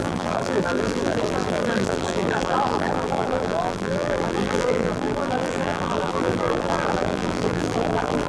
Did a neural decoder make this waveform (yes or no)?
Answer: yes